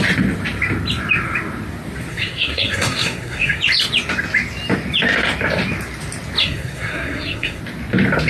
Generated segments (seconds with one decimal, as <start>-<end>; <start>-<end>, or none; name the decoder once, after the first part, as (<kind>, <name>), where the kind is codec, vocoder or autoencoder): 2.1-3.6 (codec, SNAC); 6.4-7.6